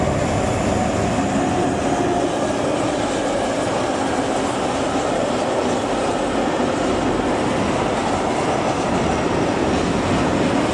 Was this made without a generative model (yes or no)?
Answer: yes